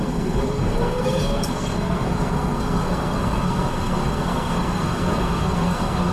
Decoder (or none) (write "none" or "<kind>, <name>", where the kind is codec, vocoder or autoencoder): codec, SNAC